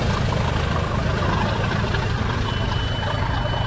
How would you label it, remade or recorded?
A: recorded